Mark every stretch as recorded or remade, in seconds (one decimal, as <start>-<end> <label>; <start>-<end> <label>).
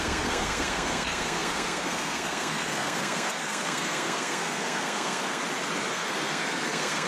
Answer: 0.0-5.4 remade; 5.4-5.9 recorded; 5.9-7.1 remade